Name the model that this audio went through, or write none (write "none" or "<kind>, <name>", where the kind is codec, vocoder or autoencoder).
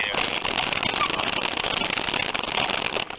none